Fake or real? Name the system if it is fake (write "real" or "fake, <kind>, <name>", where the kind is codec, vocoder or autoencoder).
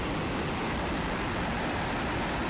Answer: real